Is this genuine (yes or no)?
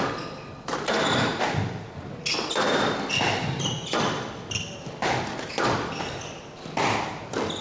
yes